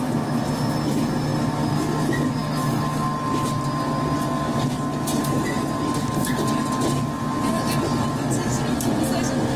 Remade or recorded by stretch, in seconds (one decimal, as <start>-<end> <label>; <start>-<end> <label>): 0.0-9.6 recorded